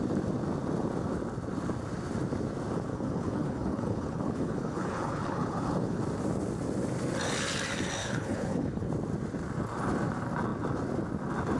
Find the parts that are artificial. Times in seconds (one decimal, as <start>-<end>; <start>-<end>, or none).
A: 2.9-6.0; 8.0-8.9